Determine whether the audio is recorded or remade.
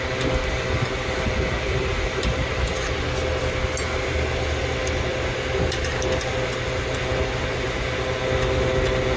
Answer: recorded